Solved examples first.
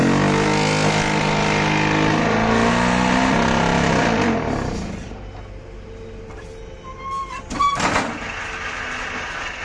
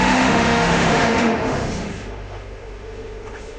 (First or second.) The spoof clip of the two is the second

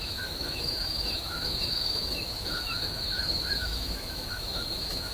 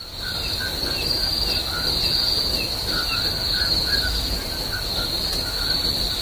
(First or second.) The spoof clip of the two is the first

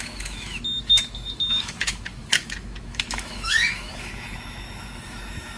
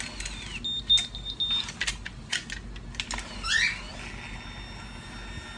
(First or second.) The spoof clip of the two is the first